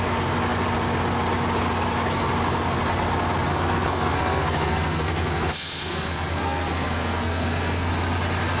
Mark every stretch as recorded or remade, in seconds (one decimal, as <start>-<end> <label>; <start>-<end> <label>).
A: 0.0-3.5 recorded; 3.5-7.9 remade; 7.9-8.6 recorded